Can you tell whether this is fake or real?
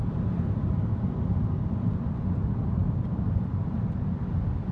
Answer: real